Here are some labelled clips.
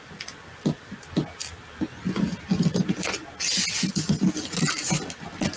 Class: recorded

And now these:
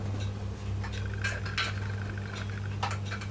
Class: recorded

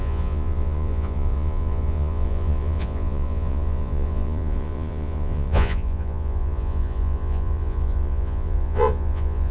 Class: remade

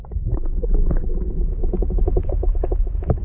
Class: recorded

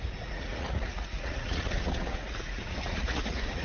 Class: remade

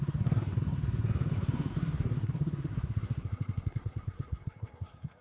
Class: remade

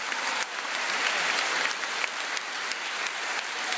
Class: recorded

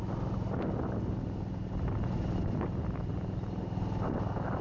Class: recorded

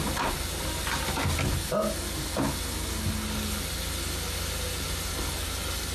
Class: recorded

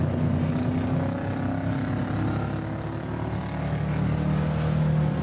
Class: recorded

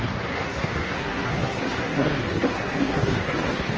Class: remade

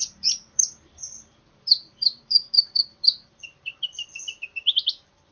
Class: remade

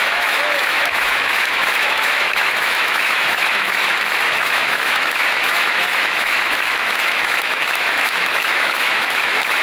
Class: remade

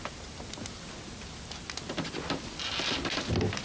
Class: recorded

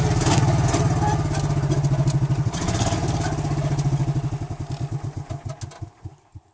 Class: recorded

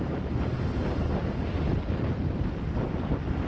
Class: recorded